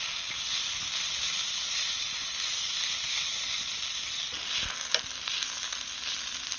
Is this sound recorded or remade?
recorded